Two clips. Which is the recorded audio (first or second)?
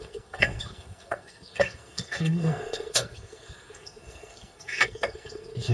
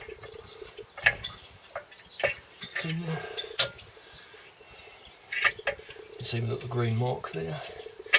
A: second